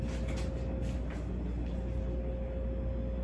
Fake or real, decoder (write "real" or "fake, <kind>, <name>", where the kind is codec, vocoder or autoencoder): real